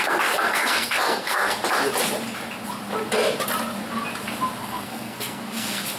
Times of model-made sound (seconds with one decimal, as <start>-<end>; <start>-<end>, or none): 0.0-1.6; 4.6-6.0